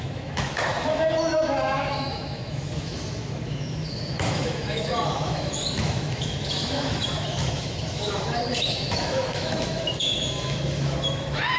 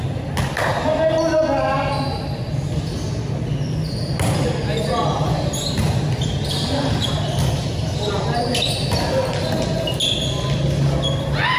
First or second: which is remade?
first